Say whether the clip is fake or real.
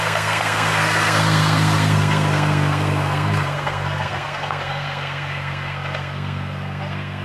fake